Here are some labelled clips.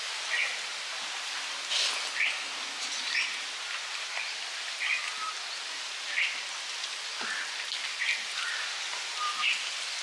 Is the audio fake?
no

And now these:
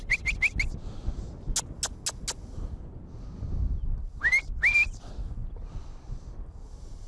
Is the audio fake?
no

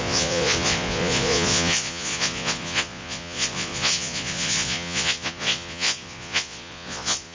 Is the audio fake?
yes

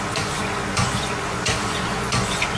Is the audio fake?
yes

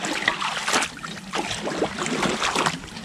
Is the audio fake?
no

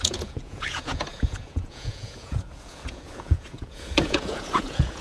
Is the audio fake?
yes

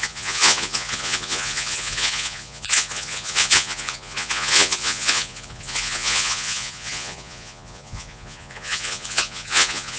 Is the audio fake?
yes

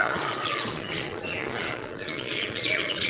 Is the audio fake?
yes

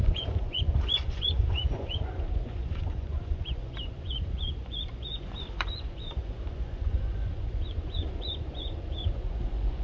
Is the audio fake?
yes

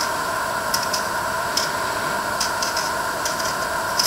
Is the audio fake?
no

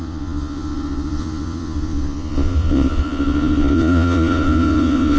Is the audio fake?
yes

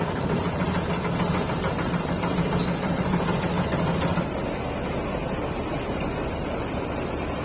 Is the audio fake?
no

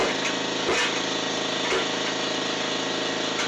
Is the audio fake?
no